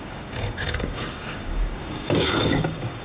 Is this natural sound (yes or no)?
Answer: no